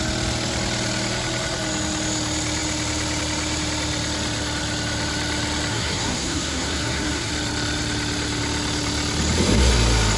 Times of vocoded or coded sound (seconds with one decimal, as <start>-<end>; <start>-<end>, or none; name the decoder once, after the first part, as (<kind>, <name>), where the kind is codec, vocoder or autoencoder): 5.7-7.3 (codec, SNAC)